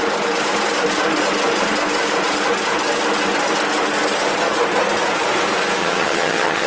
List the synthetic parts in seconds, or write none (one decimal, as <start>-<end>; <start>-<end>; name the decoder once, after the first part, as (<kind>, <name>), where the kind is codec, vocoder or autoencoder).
5.8-6.7 (vocoder, HiFi-GAN)